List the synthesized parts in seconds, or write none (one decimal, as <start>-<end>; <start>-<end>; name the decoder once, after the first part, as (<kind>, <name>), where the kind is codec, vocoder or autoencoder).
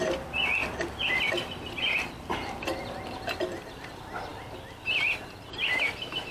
0.6-2.6 (vocoder, BigVGAN v2)